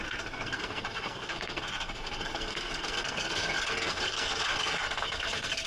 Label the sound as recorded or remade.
remade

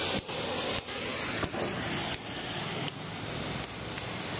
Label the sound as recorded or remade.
recorded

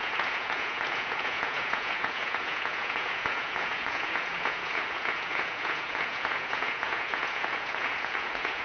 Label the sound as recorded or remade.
remade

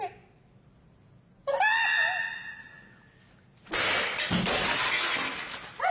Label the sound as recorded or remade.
recorded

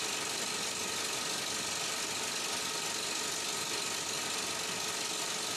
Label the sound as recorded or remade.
recorded